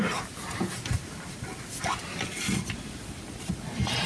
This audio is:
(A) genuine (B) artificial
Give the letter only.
A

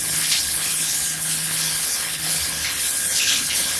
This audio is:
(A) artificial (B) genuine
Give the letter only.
A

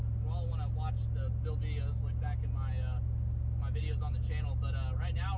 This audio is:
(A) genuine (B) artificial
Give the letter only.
A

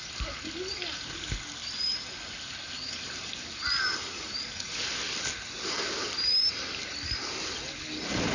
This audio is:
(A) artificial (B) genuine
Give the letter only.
B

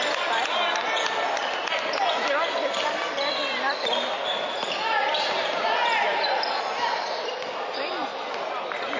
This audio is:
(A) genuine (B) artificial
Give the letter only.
A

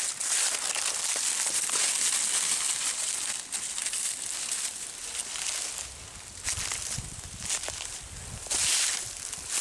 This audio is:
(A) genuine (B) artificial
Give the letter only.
A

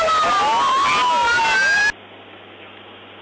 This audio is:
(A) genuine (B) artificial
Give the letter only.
A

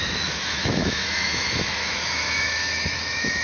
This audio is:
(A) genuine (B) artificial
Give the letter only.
B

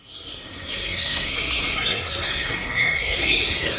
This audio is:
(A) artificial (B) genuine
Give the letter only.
A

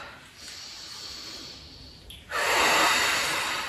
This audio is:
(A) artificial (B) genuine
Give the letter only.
B